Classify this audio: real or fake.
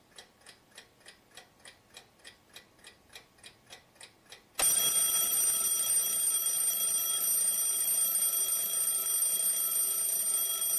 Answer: real